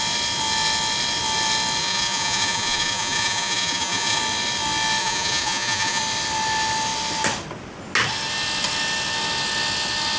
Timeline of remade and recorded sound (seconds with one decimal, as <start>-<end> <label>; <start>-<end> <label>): 0.0-1.8 recorded; 1.8-4.2 remade; 4.2-5.0 recorded; 5.0-6.0 remade; 6.0-10.2 recorded